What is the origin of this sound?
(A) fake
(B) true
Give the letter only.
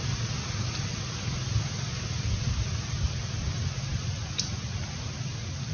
B